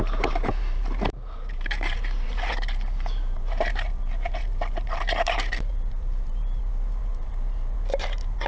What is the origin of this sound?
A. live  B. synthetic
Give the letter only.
B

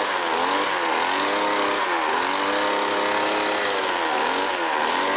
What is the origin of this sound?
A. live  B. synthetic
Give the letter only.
A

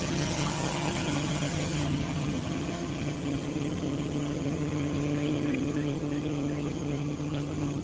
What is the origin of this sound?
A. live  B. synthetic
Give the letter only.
B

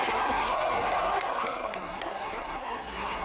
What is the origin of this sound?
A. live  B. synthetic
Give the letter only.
B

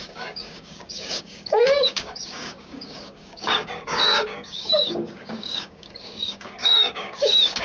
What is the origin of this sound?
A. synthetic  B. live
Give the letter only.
A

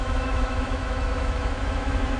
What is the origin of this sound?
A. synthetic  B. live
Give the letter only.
A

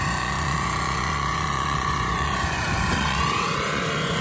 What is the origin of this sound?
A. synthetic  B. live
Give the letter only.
A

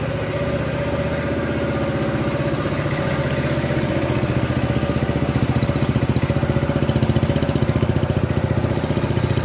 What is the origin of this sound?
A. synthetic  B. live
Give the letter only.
B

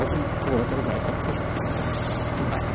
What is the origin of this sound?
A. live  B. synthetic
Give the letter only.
A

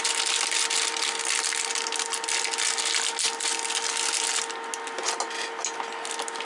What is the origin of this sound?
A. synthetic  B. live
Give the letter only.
B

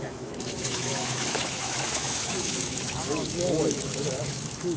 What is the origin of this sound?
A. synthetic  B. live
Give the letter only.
A